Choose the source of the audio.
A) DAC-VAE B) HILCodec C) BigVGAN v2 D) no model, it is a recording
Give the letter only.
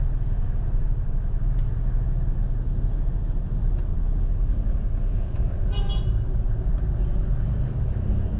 D